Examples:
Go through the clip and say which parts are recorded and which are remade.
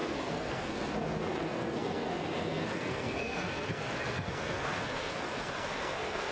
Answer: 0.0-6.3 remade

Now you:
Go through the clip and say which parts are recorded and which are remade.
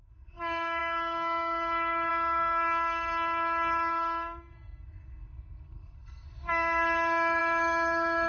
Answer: 0.0-8.3 remade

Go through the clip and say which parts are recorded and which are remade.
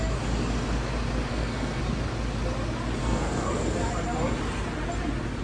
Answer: 0.0-1.3 recorded; 1.3-1.8 remade; 1.8-3.0 recorded; 3.0-3.5 remade; 3.5-5.4 recorded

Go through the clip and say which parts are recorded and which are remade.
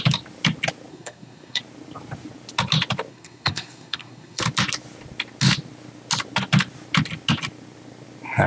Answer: 0.0-0.9 recorded; 0.9-1.6 remade; 1.6-3.1 recorded; 3.1-4.4 remade; 4.4-8.5 recorded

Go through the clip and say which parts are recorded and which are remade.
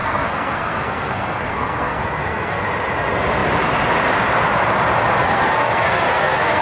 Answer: 0.0-2.6 remade; 2.6-5.2 recorded; 5.2-6.6 remade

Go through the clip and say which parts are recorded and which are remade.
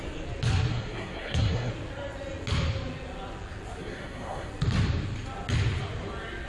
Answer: 0.0-0.7 recorded; 0.7-1.7 remade; 1.7-3.8 recorded; 3.8-4.5 remade; 4.5-6.5 recorded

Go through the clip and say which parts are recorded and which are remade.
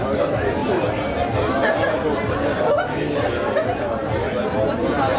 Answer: 0.0-5.2 recorded